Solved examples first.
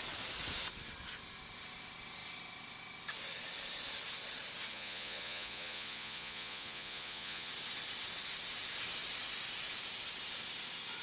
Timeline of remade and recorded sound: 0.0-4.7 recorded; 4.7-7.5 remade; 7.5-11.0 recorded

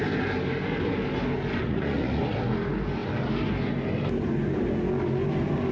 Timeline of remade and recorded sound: 0.0-1.6 recorded; 1.6-2.2 remade; 2.2-5.7 recorded

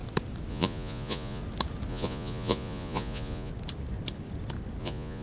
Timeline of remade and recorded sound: 0.0-0.5 recorded; 0.5-1.4 remade; 1.4-1.9 recorded; 1.9-3.5 remade; 3.5-4.8 recorded; 4.8-5.2 remade

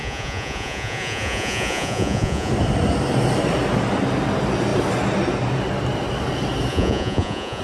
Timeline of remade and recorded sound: 0.0-2.5 remade; 2.5-6.7 recorded; 6.7-7.6 remade

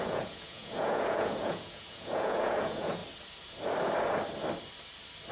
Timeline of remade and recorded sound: 0.0-3.0 remade; 3.0-5.3 recorded

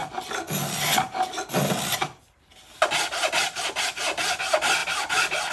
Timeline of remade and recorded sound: 0.0-5.5 recorded

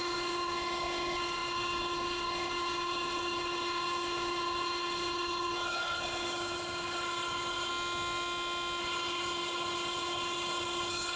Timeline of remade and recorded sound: 0.0-7.7 remade; 7.7-8.8 recorded; 8.8-11.2 remade

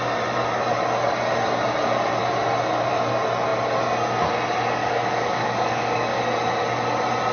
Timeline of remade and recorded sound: 0.0-4.8 recorded; 4.8-6.2 remade; 6.2-7.3 recorded